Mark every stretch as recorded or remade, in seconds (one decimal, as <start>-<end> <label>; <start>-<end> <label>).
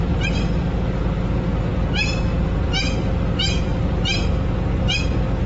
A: 0.0-5.5 recorded